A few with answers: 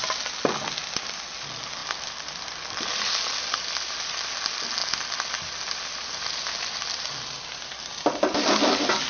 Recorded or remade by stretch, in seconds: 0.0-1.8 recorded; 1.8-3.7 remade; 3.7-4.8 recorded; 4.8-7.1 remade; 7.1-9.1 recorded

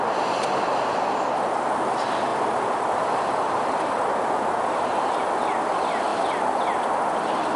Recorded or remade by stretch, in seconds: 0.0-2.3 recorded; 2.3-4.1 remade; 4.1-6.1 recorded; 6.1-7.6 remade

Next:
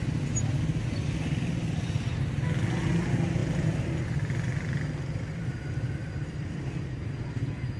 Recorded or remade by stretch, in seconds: 0.0-3.4 recorded; 3.4-5.4 remade; 5.4-6.0 recorded; 6.0-6.8 remade; 6.8-7.8 recorded

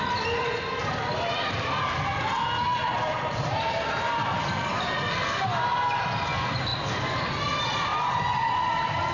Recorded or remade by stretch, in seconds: 0.0-0.8 recorded; 0.8-4.7 remade; 4.7-9.1 recorded

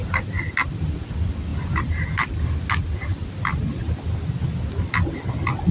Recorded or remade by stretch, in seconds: 0.0-5.7 recorded

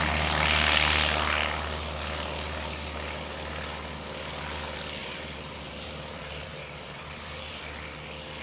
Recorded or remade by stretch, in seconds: 0.0-5.0 recorded; 5.0-7.6 remade; 7.6-8.4 recorded

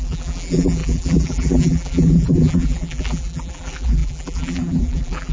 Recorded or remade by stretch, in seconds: 0.0-5.3 remade